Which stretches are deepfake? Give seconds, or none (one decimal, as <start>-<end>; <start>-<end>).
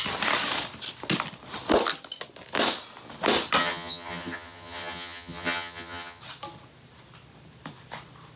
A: 3.6-6.2